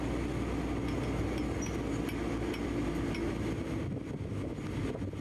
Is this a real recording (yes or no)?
yes